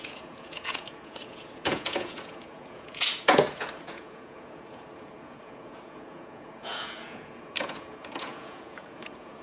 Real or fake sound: fake